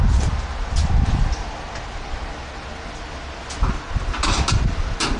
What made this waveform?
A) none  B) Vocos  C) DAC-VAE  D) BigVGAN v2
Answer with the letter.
A